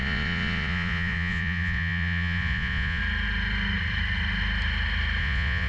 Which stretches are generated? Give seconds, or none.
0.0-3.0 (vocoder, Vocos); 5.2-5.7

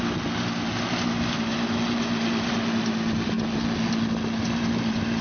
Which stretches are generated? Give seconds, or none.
none

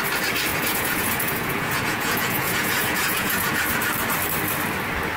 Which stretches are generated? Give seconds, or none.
0.5-3.6 (vocoder, Vocos)

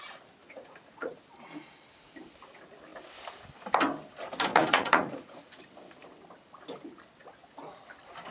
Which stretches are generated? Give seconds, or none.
0.4-1.2 (vocoder, Vocos); 4.5-5.6

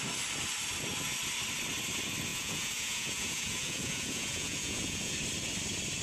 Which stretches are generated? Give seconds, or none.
2.3-5.1 (vocoder, Vocos)